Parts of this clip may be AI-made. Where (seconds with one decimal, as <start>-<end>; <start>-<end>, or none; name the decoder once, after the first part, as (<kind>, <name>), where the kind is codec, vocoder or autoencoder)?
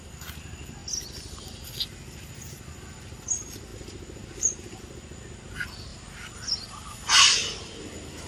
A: 3.7-4.8 (vocoder, BigVGAN v2)